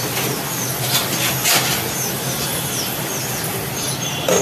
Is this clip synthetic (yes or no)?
no